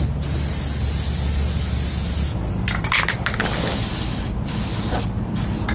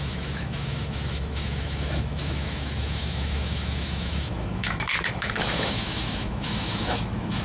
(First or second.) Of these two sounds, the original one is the first